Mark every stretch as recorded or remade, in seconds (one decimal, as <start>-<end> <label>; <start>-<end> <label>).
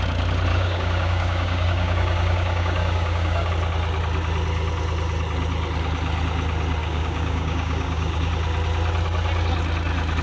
0.0-0.5 recorded; 0.5-3.5 remade; 3.5-6.8 recorded; 6.8-8.3 remade; 8.3-10.2 recorded